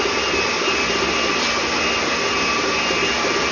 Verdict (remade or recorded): recorded